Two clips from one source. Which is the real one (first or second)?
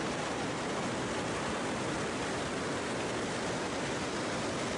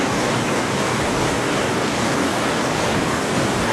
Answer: first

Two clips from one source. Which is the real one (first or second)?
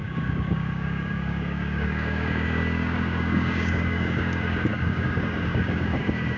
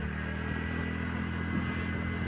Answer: second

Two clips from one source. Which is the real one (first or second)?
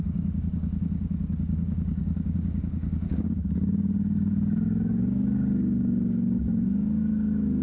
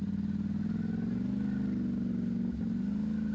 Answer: second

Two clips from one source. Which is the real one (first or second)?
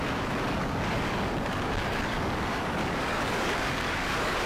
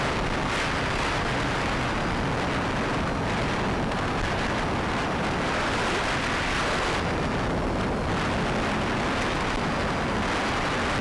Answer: second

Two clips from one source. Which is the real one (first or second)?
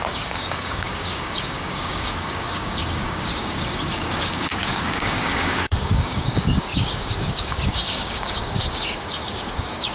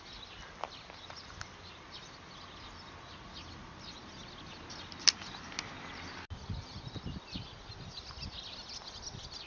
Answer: second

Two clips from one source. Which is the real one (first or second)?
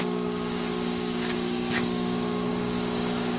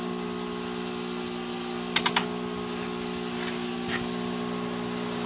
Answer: second